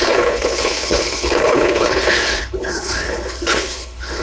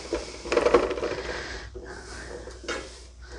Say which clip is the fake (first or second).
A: first